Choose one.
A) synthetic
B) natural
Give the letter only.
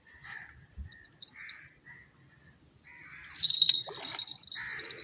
B